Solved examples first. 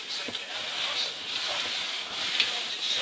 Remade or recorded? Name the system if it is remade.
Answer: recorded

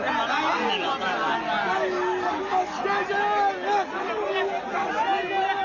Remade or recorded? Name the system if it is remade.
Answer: recorded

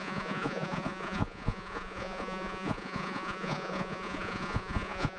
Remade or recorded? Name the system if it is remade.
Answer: remade, vocoder, Vocos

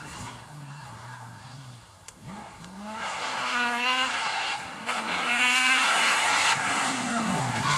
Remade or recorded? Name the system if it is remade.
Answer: remade, codec, SNAC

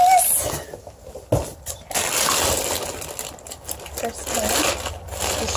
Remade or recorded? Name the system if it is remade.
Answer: recorded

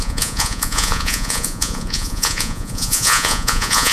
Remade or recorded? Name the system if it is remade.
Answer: remade, vocoder, Vocos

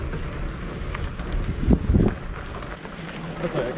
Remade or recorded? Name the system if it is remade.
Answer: recorded